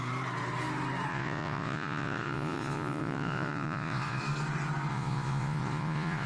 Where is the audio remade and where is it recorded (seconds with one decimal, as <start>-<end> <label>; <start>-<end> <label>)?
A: 0.0-1.1 recorded; 1.1-4.2 remade; 4.2-4.9 recorded; 4.9-6.3 remade